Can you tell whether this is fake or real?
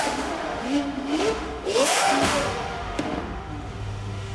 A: fake